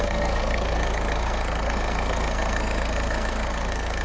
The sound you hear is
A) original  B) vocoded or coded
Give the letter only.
B